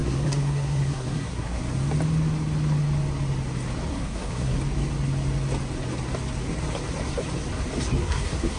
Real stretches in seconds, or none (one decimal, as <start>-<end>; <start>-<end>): 1.6-3.9; 4.6-8.0